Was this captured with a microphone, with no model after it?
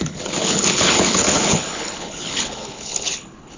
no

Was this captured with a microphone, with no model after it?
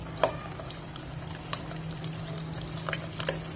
yes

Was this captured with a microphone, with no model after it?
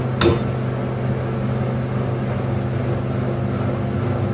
yes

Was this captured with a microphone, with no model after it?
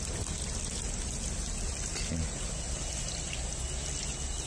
yes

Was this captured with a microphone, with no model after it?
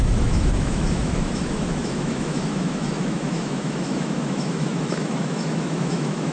no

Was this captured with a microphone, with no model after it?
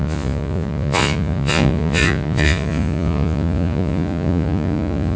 no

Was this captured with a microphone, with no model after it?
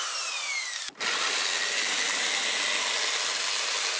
yes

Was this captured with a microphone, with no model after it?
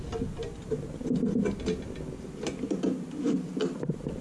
yes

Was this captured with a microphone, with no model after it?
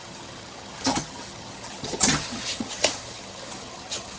no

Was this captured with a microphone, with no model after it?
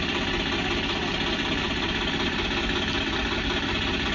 yes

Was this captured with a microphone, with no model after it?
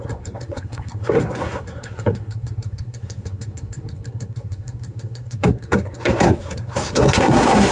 no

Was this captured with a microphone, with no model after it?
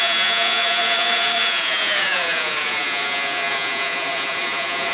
no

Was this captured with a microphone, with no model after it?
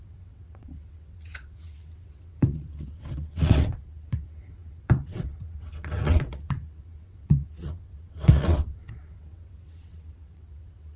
no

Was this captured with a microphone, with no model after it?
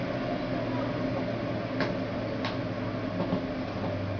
yes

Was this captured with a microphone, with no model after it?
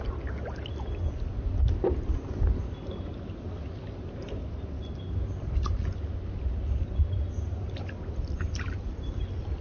yes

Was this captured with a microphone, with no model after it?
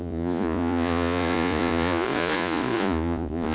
no